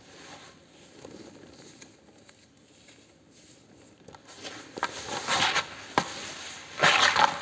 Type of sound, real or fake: real